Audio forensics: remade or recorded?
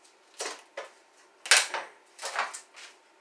recorded